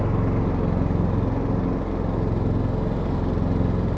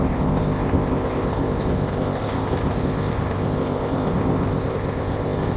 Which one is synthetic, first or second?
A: second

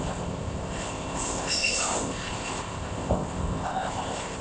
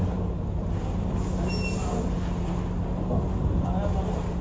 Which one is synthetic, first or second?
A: first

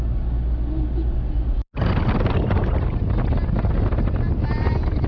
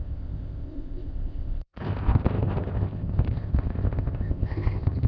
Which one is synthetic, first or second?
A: second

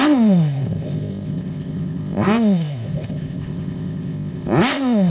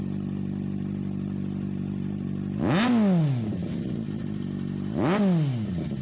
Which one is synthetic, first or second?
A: first